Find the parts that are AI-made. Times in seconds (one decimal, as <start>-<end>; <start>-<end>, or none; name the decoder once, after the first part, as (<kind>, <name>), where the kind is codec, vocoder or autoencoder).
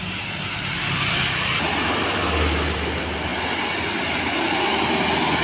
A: none